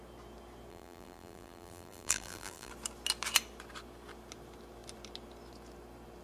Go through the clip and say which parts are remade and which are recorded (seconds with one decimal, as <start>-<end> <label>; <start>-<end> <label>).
0.0-0.7 recorded; 0.7-2.7 remade; 2.7-6.2 recorded